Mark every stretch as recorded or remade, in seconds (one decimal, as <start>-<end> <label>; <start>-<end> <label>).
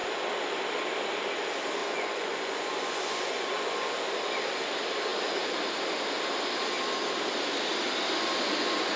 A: 0.0-1.8 recorded; 1.8-3.9 remade; 3.9-9.0 recorded